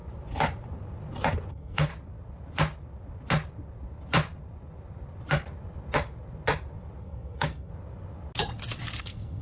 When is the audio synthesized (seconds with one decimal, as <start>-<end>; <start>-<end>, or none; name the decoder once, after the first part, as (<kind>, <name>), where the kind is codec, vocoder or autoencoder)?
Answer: 1.5-1.9 (codec, SNAC); 7.0-7.7; 9.0-9.4